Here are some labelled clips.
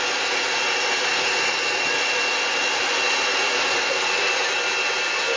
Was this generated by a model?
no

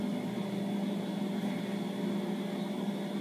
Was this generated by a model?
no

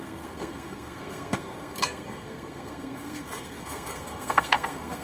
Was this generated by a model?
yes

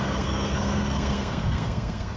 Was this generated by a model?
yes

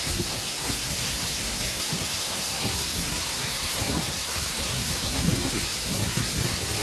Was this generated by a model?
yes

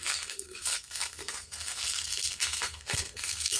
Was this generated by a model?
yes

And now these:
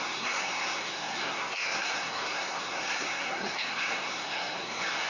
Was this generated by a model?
yes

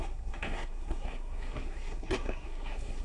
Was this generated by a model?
yes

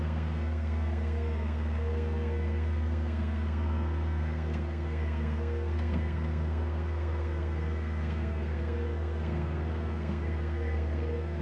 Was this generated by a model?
yes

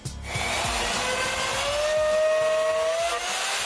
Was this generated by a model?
no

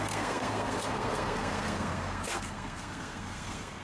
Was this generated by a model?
yes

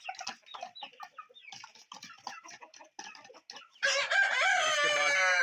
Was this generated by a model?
no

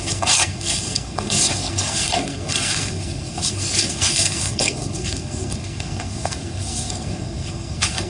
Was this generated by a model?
yes